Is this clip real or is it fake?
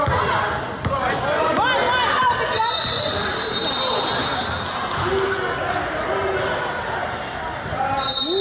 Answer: real